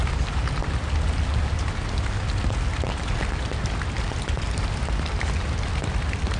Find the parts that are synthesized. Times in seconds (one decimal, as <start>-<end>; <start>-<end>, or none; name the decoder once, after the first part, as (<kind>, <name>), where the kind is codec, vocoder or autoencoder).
none